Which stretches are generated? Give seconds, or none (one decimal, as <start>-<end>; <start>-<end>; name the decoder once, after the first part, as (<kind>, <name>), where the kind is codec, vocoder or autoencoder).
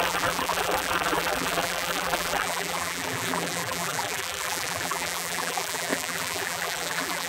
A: 0.0-7.3 (vocoder, BigVGAN v2)